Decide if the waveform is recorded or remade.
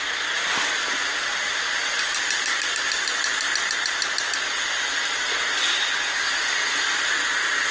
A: recorded